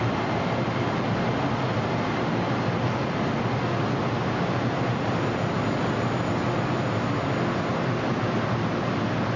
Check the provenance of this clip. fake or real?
real